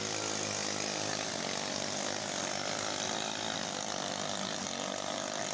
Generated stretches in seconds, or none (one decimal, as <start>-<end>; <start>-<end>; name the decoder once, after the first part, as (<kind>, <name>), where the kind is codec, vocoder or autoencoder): none